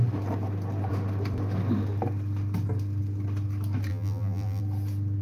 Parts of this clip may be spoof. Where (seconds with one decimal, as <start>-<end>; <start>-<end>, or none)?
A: 3.9-4.6

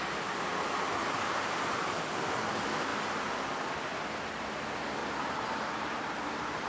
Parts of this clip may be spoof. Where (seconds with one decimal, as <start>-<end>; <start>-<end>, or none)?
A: 1.0-2.3; 5.0-6.7